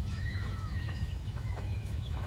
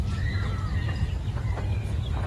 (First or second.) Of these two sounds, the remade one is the first